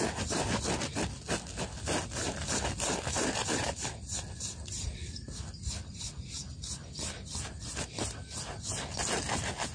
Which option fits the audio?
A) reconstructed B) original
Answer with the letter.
B